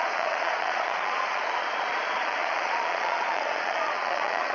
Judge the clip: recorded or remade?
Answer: remade